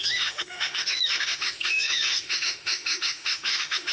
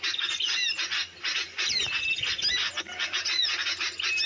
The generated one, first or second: first